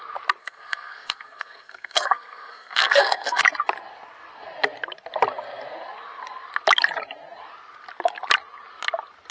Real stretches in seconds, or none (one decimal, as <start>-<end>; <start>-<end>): 0.0-0.4; 3.4-9.3